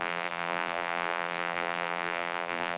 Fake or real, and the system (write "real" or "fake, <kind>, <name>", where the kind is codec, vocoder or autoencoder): fake, vocoder, BigVGAN v2